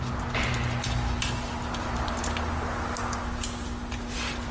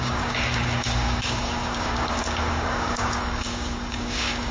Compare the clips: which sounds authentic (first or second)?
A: first